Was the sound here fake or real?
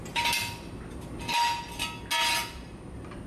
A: real